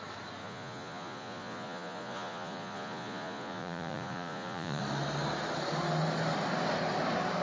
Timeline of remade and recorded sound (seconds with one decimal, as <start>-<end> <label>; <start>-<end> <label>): 0.0-0.4 recorded; 0.4-4.8 remade; 4.8-7.4 recorded